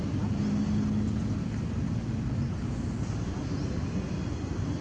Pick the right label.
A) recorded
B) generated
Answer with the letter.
A